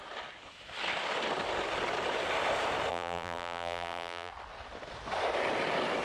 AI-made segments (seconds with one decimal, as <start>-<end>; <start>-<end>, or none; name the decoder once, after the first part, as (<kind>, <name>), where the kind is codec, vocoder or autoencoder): 2.9-4.3 (vocoder, BigVGAN v2)